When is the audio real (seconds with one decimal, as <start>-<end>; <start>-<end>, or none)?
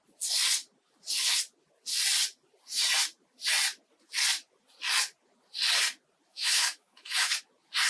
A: 0.0-6.3; 7.4-7.9